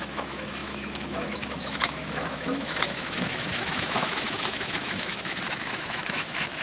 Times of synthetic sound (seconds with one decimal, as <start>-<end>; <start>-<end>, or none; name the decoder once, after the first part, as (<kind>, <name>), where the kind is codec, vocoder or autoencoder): 0.0-6.6 (autoencoder, DAC-VAE)